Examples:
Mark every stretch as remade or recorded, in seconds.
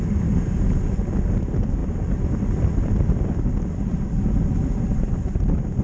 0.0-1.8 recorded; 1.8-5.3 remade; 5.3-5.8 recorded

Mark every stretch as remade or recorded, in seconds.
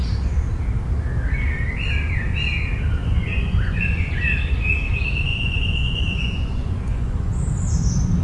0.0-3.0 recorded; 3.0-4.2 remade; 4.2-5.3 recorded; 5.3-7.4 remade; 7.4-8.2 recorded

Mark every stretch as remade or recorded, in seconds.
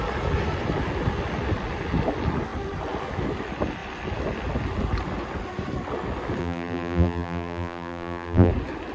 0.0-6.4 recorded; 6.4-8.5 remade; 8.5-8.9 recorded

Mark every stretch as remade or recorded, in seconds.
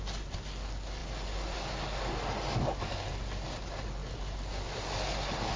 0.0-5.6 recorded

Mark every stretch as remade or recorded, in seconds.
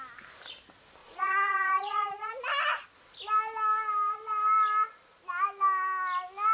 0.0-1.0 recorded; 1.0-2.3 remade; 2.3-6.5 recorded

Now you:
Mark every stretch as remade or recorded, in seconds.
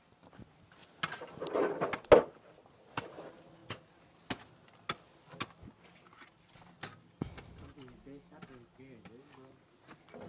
0.0-10.3 recorded